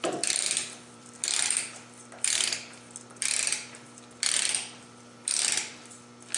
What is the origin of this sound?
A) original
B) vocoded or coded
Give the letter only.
B